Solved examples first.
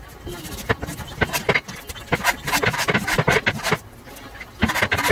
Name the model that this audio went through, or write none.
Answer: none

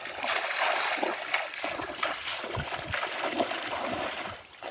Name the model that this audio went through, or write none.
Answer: none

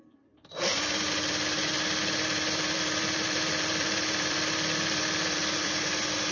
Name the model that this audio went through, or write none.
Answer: vocoder, BigVGAN v2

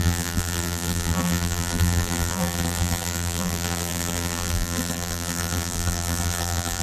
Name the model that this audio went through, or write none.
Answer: vocoder, BigVGAN v2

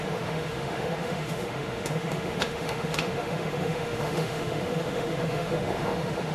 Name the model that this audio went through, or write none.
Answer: autoencoder, DAC-VAE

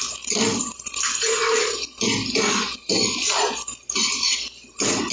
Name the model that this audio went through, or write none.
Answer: none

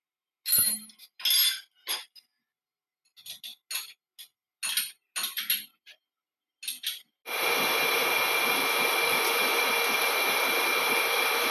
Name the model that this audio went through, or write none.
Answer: none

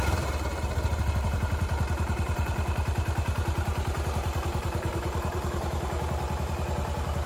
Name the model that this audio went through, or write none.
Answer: vocoder, BigVGAN v2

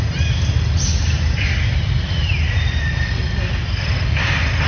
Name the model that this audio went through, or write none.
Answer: none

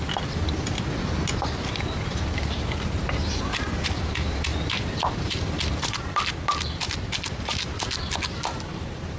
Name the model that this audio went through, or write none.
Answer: none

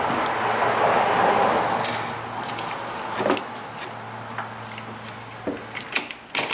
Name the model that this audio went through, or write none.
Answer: none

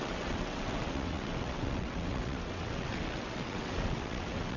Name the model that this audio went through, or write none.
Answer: vocoder, WaveNeXt